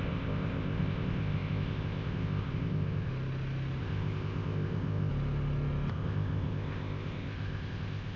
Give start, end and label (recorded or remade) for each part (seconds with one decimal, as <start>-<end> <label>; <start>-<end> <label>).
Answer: 0.0-3.1 remade; 3.1-3.8 recorded; 3.8-5.1 remade; 5.1-5.9 recorded; 5.9-8.2 remade